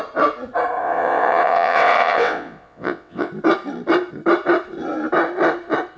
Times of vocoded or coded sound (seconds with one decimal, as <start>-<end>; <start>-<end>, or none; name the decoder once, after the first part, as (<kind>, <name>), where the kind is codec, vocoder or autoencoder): 0.8-3.3 (vocoder, WaveNeXt)